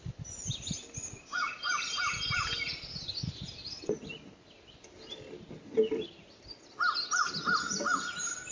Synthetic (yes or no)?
no